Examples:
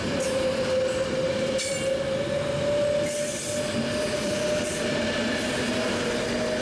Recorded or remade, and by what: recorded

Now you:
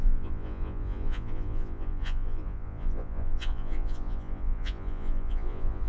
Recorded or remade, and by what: remade, vocoder, Vocos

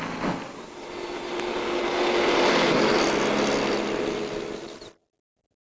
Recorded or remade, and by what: recorded